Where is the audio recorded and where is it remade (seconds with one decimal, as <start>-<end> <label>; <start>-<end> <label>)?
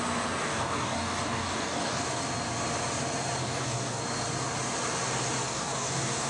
0.0-0.4 recorded; 0.4-2.2 remade; 2.2-3.4 recorded; 3.4-4.0 remade; 4.0-5.4 recorded; 5.4-6.3 remade